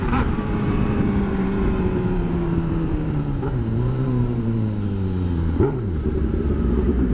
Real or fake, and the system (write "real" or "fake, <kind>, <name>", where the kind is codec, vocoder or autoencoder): fake, vocoder, BigVGAN v2